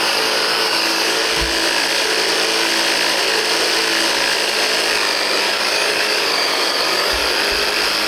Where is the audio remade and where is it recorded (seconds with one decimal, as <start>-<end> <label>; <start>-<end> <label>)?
0.0-1.2 remade; 1.2-5.4 recorded; 5.4-7.2 remade; 7.2-8.1 recorded